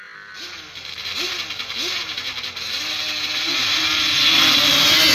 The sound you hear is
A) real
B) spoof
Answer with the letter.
A